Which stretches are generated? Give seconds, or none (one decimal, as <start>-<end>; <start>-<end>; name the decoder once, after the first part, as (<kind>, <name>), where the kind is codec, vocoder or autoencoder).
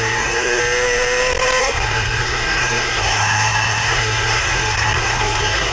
0.0-0.6 (codec, SNAC); 1.6-5.7